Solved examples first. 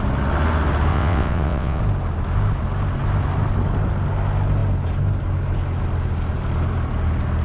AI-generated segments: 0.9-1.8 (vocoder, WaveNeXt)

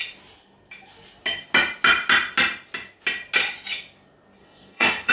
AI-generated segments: 4.4-5.1 (codec, SNAC)

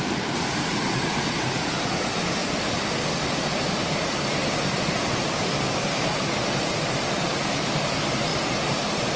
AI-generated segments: 0.0-8.3 (vocoder, BigVGAN v2)